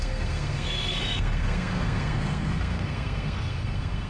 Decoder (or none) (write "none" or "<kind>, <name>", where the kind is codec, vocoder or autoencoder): codec, SNAC